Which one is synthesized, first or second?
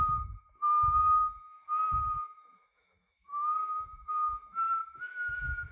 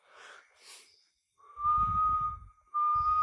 first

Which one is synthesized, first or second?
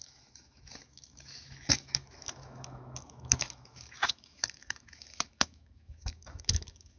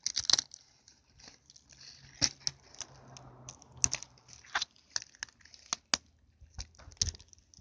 first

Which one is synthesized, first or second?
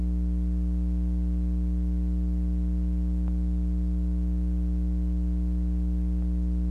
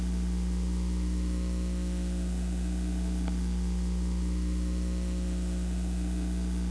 second